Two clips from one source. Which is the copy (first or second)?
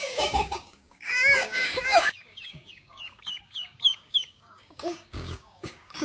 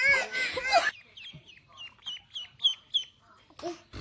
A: first